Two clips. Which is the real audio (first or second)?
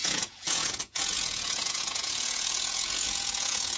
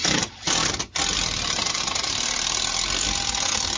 second